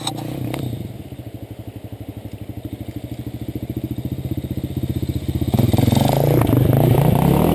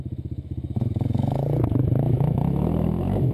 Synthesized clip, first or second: second